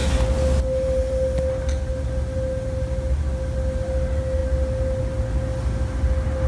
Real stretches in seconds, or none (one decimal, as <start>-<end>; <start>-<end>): 0.0-6.5